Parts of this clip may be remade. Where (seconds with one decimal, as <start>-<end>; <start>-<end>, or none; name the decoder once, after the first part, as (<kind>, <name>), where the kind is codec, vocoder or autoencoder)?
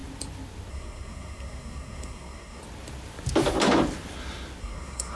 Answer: 0.7-2.6 (codec, SNAC); 4.6-5.2